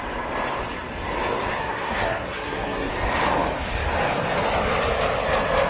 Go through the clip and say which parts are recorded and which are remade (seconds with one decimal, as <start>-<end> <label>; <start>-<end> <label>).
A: 0.0-1.6 recorded; 1.6-2.9 remade; 2.9-5.7 recorded

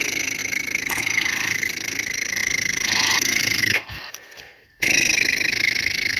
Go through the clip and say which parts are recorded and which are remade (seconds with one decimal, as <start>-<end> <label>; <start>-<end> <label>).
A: 0.0-6.2 remade